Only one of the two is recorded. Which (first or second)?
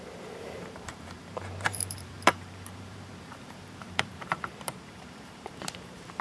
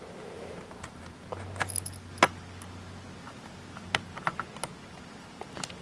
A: second